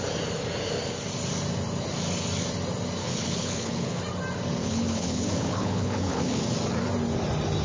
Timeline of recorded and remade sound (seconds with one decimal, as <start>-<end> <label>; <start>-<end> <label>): 0.0-3.0 recorded; 3.0-4.0 remade; 4.0-4.6 recorded; 4.6-6.4 remade; 6.4-7.6 recorded

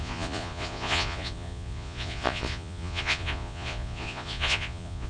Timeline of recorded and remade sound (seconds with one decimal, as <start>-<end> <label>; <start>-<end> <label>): 0.0-5.1 remade

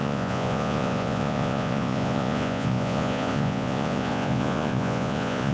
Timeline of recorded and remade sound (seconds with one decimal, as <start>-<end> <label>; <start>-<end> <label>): 0.0-5.5 remade

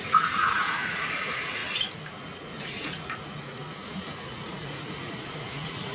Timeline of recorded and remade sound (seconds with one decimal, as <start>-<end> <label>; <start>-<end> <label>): 0.0-1.6 remade; 1.6-2.2 recorded; 2.2-5.9 remade